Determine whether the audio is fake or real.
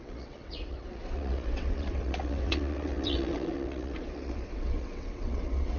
fake